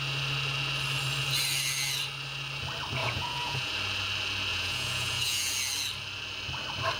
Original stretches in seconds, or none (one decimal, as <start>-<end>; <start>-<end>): 0.0-3.0; 3.7-4.5; 5.5-7.0

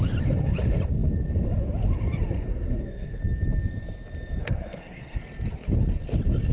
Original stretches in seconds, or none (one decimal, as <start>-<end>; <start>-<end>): 0.0-2.5; 3.2-4.4; 5.2-6.5

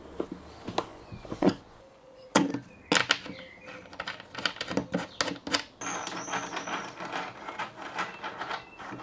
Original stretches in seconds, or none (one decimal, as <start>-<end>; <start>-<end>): 0.0-0.9; 2.5-9.0

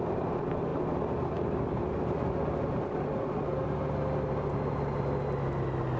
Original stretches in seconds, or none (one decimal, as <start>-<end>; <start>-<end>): 0.0-6.0

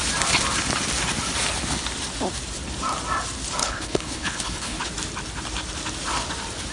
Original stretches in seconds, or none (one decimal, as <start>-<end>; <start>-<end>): 0.0-3.6; 4.8-6.7

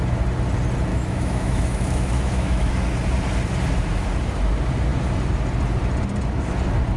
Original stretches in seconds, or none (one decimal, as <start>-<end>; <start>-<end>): 0.0-0.9; 2.7-7.0